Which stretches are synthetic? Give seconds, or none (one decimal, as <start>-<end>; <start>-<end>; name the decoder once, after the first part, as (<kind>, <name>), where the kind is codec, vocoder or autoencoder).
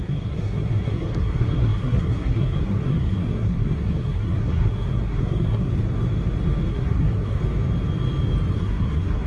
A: 0.0-5.7 (codec, SNAC); 6.7-7.4; 8.5-9.3